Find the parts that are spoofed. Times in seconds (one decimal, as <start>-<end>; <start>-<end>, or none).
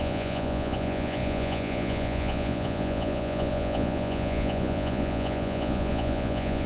0.0-6.7